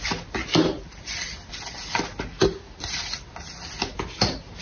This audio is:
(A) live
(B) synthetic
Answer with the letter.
A